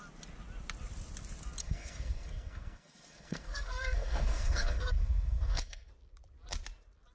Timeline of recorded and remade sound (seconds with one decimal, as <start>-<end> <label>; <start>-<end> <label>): 0.0-1.6 recorded; 1.6-5.9 remade; 5.9-7.1 recorded